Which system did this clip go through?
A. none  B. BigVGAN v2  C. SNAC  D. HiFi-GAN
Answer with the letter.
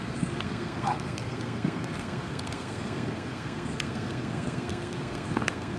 C